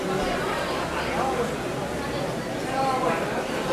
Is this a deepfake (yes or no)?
no